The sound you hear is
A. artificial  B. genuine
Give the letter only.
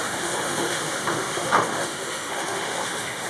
A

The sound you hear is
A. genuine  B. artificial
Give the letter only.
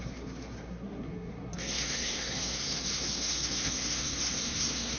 B